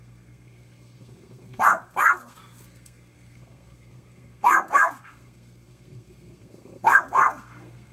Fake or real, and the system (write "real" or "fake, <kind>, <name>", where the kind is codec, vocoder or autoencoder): fake, codec, SNAC